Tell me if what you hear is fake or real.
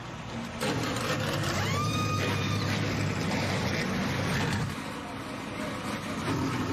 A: real